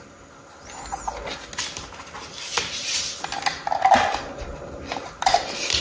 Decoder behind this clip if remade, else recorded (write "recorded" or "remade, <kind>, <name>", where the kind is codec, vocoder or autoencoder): recorded